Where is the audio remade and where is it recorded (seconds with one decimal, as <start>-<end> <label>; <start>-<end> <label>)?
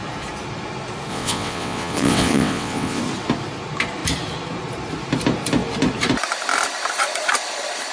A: 0.0-1.1 recorded; 1.1-3.0 remade; 3.0-7.9 recorded